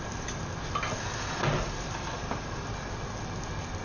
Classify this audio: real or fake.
real